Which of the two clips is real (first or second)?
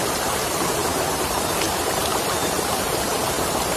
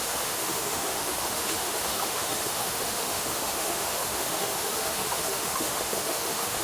first